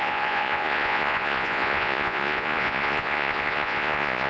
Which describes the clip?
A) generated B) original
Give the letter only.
A